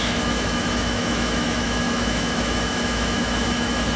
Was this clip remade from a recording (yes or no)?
yes